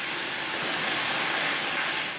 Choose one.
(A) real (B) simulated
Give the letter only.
A